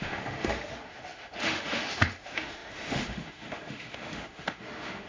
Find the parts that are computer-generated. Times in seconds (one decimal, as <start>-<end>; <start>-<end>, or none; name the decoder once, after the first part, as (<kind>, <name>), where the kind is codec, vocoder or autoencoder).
0.0-5.1 (autoencoder, DAC-VAE)